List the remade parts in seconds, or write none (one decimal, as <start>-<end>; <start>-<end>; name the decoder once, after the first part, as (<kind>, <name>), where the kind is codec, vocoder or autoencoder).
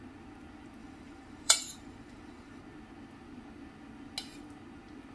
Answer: 0.8-2.6 (vocoder, BigVGAN v2)